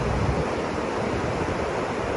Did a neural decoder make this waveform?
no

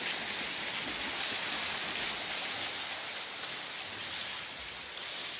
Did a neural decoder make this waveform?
no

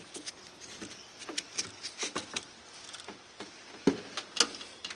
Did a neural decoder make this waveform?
no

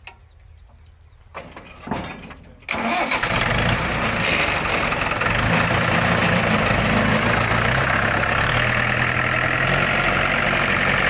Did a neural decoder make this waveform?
no